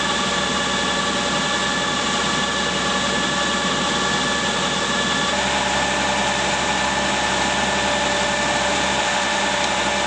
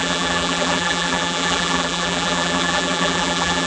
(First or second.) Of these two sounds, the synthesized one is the second